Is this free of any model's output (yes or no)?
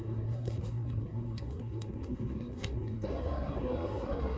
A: no